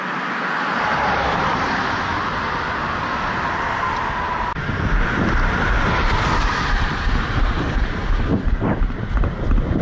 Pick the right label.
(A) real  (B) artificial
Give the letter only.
A